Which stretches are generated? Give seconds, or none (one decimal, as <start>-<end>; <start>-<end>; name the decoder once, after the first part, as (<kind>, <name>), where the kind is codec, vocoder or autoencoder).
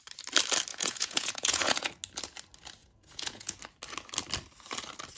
0.7-1.9 (vocoder, Vocos); 2.8-3.6